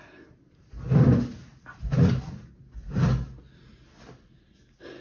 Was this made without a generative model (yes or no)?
yes